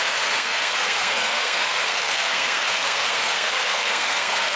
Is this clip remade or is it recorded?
remade